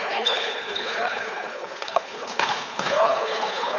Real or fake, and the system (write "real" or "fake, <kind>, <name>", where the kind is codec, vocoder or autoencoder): fake, codec, HILCodec